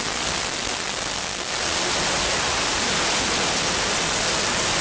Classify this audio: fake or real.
real